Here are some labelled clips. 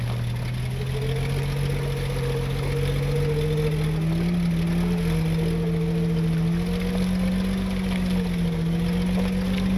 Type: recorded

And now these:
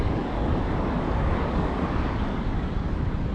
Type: remade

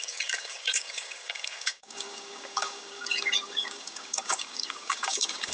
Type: remade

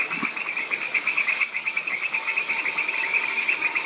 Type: remade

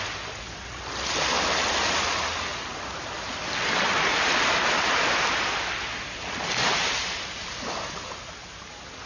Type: recorded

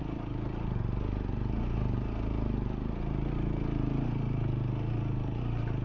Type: recorded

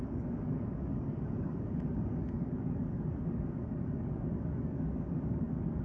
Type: remade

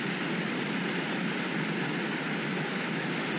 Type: recorded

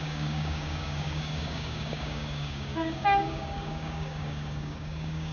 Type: remade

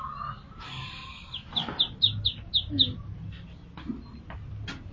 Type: recorded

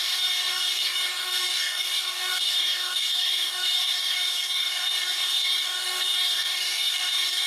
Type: remade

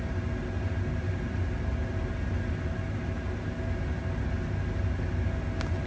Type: recorded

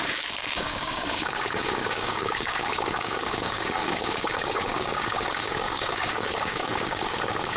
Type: remade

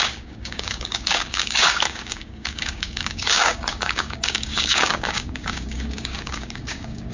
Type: remade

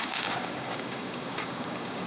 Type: remade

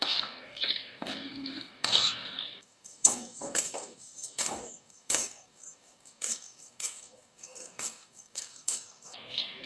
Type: remade